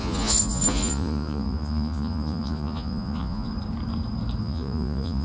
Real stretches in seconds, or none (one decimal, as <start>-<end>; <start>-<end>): 3.5-4.4